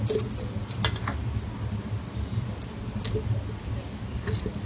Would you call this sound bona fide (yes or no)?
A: yes